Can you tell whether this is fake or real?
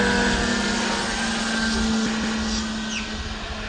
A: real